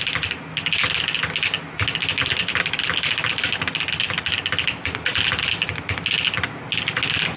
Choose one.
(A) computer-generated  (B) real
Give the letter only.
B